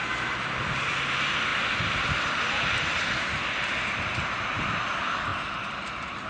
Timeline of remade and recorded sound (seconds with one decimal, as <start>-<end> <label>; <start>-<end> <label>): 0.0-1.1 remade; 1.1-1.5 recorded; 1.5-3.8 remade; 3.8-5.3 recorded; 5.3-6.3 remade